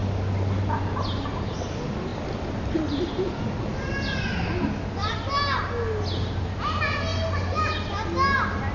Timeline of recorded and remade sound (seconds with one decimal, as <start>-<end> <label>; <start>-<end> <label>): 0.0-8.7 recorded